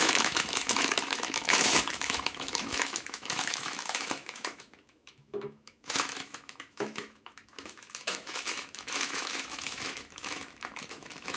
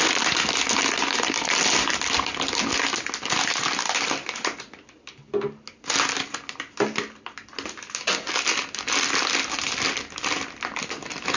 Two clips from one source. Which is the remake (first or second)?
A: first